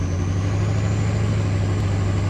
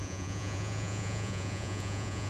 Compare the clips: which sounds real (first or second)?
first